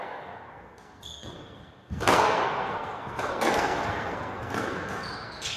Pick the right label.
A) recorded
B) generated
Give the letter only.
B